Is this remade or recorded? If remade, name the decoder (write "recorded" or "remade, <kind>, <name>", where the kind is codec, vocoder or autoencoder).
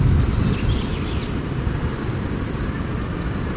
remade, vocoder, BigVGAN v2